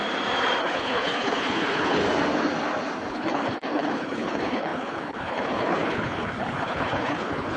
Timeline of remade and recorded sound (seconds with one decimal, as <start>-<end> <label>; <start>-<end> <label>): 0.0-0.6 recorded; 0.6-2.0 remade; 2.0-3.1 recorded; 3.1-7.6 remade